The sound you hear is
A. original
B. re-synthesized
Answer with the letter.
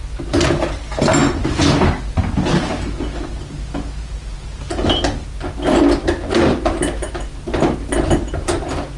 A